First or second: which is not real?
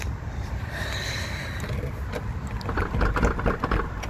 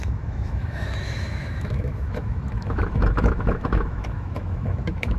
second